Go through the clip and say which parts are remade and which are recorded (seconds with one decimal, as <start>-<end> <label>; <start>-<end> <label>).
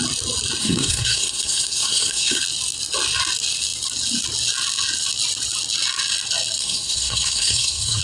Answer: 0.0-0.6 recorded; 0.6-2.4 remade; 2.4-6.6 recorded; 6.6-8.0 remade